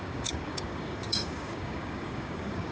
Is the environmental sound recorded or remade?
remade